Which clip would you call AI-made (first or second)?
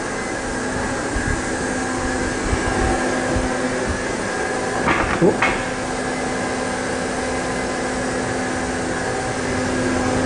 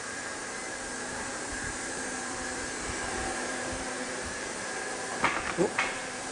second